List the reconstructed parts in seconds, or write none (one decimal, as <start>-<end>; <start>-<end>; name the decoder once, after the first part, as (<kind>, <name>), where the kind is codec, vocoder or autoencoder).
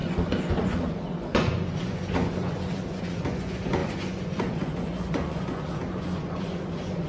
0.0-7.1 (vocoder, Vocos)